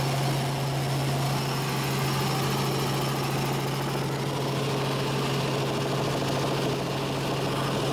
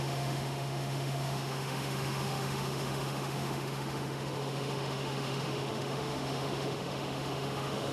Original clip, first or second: first